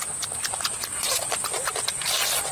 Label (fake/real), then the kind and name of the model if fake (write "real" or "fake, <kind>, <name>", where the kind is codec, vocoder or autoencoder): real